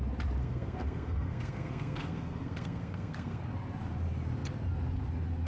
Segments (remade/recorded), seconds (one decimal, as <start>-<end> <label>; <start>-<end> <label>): 0.0-0.4 recorded; 0.4-3.4 remade; 3.4-5.5 recorded